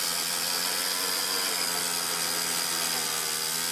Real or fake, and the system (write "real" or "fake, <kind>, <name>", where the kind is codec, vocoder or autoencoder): real